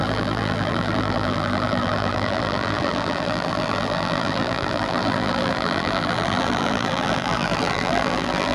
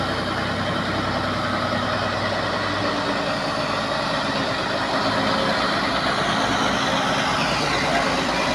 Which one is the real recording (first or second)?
second